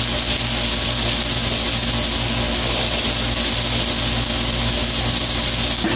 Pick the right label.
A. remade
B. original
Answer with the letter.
B